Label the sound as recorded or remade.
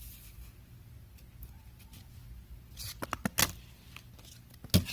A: recorded